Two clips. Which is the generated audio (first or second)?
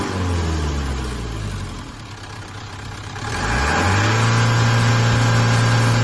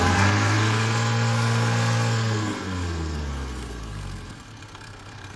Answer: second